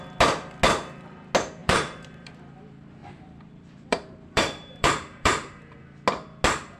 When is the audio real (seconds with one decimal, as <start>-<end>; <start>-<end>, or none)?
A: 0.0-1.6; 2.3-3.0; 5.8-6.8